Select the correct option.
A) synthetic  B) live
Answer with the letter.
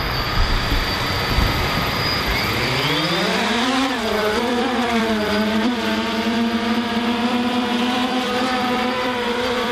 A